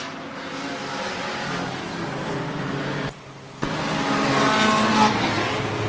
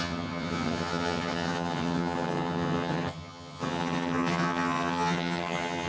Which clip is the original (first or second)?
first